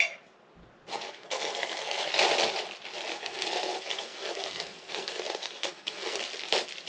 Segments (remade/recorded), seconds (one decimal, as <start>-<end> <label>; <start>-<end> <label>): 0.0-0.9 recorded; 0.9-2.1 remade; 2.1-3.1 recorded; 3.1-6.2 remade; 6.2-6.9 recorded

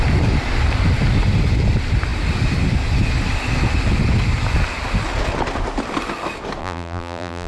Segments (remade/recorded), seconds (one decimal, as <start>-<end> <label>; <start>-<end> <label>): 0.0-6.6 recorded; 6.6-7.5 remade

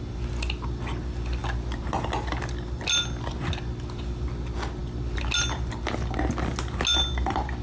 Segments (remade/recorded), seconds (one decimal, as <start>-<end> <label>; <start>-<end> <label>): 0.0-7.6 recorded